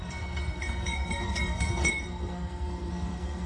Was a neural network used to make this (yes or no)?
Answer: yes